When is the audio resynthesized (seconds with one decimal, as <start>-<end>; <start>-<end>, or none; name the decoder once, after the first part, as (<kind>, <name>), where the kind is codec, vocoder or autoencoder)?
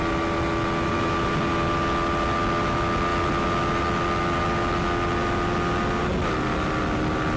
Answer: none